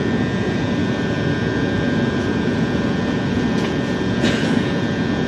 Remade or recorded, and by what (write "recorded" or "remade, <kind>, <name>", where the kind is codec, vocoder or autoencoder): remade, vocoder, Vocos